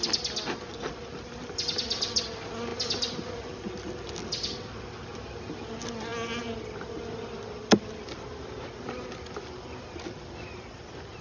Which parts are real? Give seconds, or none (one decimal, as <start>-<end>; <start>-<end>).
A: 0.0-11.2